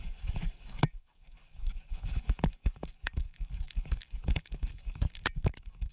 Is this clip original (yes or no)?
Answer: no